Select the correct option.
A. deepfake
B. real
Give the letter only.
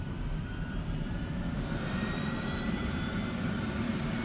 A